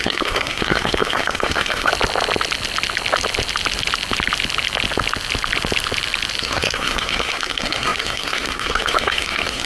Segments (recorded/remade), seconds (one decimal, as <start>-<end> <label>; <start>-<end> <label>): 0.0-1.9 remade; 1.9-6.4 recorded; 6.4-9.7 remade